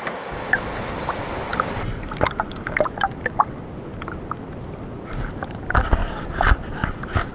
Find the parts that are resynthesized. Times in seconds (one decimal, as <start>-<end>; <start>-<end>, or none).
1.5-3.1; 6.0-7.3